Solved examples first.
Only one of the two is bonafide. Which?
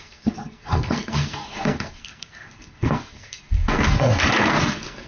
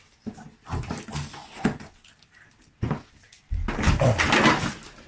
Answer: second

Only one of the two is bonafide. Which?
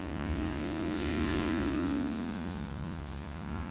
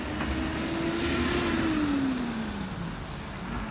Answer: second